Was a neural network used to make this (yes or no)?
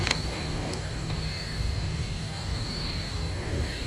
yes